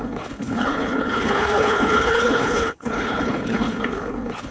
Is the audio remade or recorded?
remade